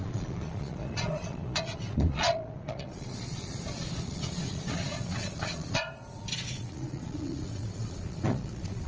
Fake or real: fake